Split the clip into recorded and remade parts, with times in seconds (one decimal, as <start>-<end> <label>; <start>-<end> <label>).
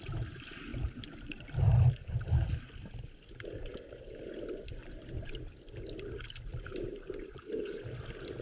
0.0-4.8 recorded; 4.8-5.3 remade; 5.3-6.5 recorded; 6.5-7.8 remade; 7.8-8.4 recorded